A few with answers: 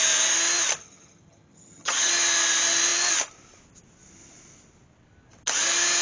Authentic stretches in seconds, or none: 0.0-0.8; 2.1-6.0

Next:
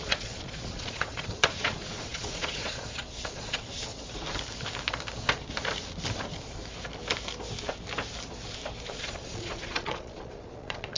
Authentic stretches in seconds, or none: 3.9-8.9

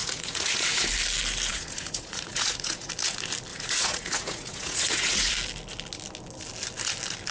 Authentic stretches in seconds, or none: 0.9-1.5; 2.9-3.5; 5.3-7.3

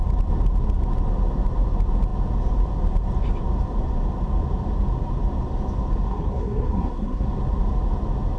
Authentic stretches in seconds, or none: 0.0-6.1; 7.3-8.4